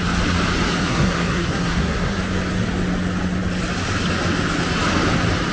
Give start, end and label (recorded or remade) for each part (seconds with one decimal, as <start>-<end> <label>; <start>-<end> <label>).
0.0-0.8 recorded; 0.8-2.2 remade; 2.2-5.5 recorded